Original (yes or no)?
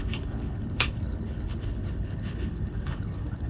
no